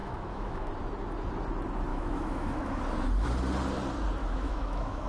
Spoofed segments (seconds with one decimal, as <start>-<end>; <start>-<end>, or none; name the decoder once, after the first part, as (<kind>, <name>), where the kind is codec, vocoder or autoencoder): 0.0-0.7 (autoencoder, DAC-VAE); 1.9-2.8; 4.2-5.1